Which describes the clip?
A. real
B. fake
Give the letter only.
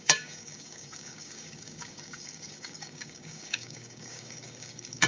B